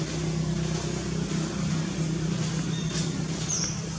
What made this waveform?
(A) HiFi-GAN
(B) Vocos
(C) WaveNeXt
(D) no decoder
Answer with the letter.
D